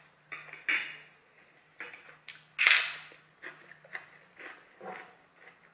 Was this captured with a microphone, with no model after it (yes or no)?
yes